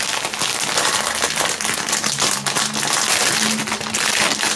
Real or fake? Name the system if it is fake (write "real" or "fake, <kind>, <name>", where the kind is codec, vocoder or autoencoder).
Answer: real